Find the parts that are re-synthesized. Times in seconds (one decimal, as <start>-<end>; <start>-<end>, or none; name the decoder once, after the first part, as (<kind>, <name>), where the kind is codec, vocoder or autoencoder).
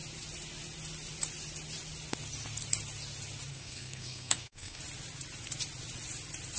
3.5-4.8 (codec, SNAC)